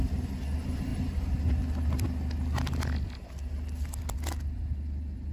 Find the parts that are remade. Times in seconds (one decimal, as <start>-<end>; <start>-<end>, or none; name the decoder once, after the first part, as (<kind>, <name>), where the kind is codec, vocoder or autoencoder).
none